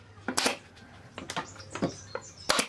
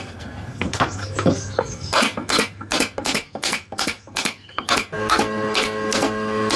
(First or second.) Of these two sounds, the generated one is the second